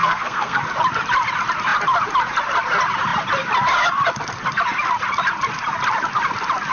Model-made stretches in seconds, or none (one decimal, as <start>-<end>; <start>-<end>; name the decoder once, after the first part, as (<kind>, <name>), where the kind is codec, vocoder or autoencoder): 0.0-0.6 (codec, SNAC)